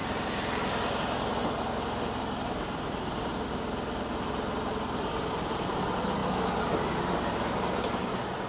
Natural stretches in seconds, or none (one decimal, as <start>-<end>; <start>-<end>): 0.0-8.5